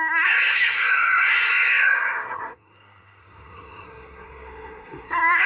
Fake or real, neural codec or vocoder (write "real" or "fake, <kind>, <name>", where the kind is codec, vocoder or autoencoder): fake, codec, SNAC